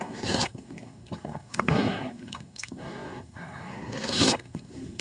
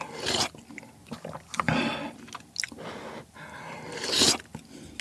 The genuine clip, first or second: second